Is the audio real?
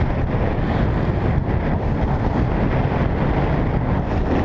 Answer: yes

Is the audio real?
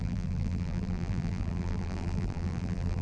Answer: no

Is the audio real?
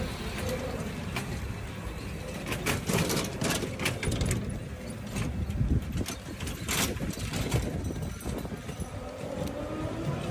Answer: yes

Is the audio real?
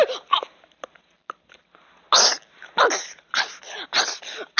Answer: yes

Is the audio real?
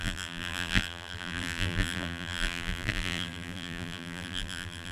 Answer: no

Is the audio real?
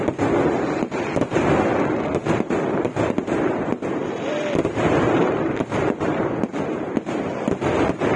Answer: no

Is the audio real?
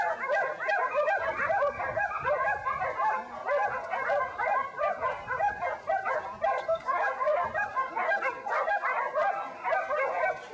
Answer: yes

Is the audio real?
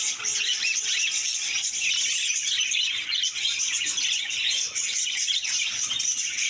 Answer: no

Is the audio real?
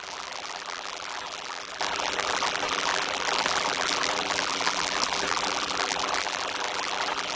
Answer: no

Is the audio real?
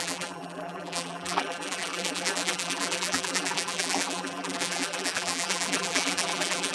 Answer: no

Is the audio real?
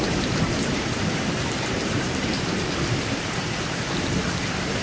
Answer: no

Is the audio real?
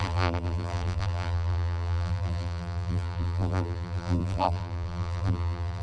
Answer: no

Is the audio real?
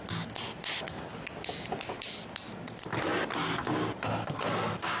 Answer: yes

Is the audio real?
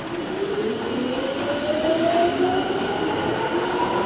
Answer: yes